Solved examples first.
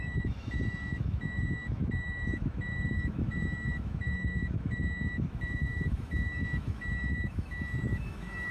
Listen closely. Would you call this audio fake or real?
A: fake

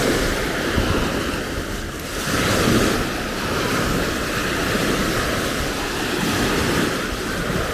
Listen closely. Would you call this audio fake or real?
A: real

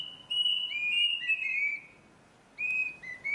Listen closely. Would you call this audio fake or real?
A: real